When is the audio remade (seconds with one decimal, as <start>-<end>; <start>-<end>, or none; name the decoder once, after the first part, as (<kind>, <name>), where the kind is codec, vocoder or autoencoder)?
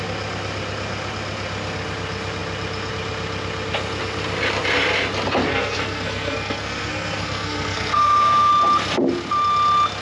5.5-8.5 (codec, SNAC)